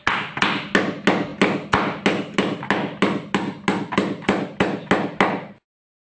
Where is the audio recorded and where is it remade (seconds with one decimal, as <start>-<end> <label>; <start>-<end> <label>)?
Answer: 0.0-6.0 recorded